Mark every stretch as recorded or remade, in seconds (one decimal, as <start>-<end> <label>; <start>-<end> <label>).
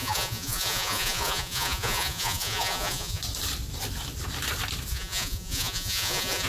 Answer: 0.0-3.2 remade; 3.2-4.9 recorded; 4.9-6.5 remade